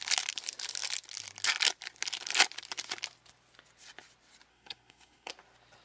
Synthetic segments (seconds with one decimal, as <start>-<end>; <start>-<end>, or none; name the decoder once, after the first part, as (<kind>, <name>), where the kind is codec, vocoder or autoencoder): 4.5-5.3 (codec, SNAC)